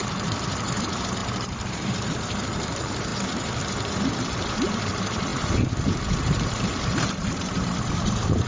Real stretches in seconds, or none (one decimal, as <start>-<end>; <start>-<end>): none